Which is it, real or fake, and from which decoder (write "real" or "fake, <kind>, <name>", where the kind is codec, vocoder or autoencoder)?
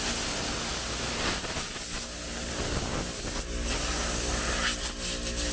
real